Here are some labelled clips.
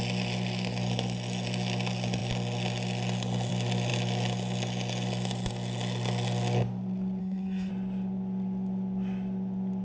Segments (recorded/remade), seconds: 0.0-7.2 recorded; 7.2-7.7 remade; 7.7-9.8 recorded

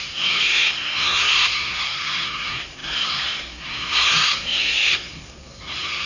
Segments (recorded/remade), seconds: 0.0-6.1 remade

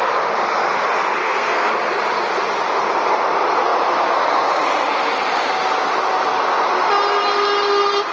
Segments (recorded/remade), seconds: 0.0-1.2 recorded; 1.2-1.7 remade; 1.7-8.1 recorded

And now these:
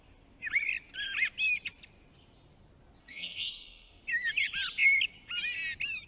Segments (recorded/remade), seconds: 0.0-3.0 recorded; 3.0-4.0 remade; 4.0-6.1 recorded